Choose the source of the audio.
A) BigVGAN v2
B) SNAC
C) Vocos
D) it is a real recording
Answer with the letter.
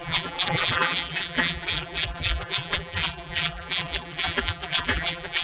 A